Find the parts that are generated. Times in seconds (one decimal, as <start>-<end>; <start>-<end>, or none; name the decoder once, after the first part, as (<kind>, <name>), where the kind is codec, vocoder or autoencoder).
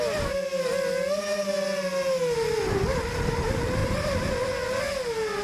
none